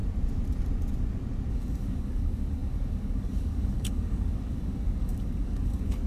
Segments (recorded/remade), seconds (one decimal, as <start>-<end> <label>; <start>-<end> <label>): 0.0-1.5 recorded; 1.5-6.1 remade